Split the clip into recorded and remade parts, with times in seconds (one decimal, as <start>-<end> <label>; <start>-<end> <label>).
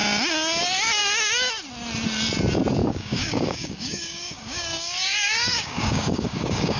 0.0-2.8 recorded; 2.8-6.8 remade